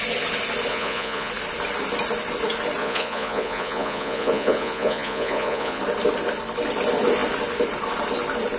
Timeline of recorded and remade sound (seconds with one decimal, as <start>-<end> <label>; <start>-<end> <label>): 0.0-0.7 recorded; 0.7-1.3 remade; 1.3-2.8 recorded; 2.8-5.8 remade; 5.8-8.6 recorded

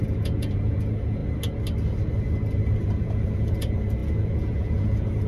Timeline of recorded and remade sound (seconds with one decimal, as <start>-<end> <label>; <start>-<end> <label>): 0.0-1.2 remade; 1.2-2.8 recorded; 2.8-5.3 remade

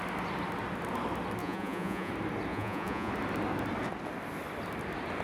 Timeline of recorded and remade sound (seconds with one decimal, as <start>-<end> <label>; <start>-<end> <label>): 0.0-1.4 recorded; 1.4-2.1 remade; 2.1-2.5 recorded; 2.5-3.1 remade; 3.1-5.2 recorded

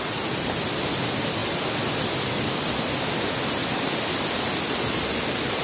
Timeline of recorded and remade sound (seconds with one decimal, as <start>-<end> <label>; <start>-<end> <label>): 0.0-5.6 recorded

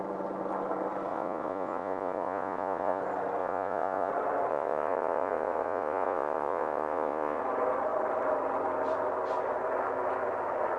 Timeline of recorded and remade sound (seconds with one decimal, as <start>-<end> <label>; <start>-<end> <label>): 0.0-1.1 recorded; 1.1-3.0 remade; 3.0-3.4 recorded; 3.4-4.1 remade; 4.1-4.5 recorded; 4.5-7.4 remade; 7.4-10.8 recorded

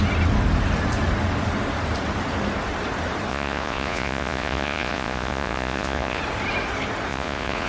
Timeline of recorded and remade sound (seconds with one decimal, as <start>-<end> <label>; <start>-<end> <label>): 0.0-3.3 recorded; 3.3-6.2 remade; 6.2-7.1 recorded; 7.1-7.7 remade